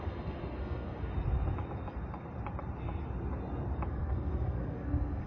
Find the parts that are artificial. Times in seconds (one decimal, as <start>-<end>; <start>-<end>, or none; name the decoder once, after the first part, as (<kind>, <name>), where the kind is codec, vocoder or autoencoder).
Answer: 0.0-1.1 (codec, SNAC); 3.9-5.3